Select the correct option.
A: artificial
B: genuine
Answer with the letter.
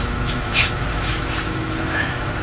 A